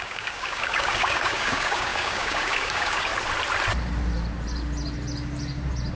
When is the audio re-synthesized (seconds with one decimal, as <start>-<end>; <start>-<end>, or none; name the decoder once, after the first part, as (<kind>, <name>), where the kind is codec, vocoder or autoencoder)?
0.0-3.1 (codec, DAC)